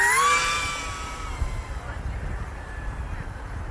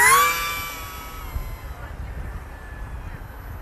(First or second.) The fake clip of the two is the first